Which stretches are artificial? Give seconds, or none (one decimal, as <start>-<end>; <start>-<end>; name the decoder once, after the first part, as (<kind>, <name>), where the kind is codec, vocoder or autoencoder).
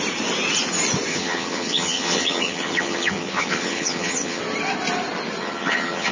1.1-4.4 (vocoder, HiFi-GAN); 5.4-6.1